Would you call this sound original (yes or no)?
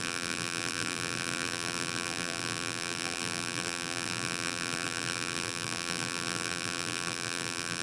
no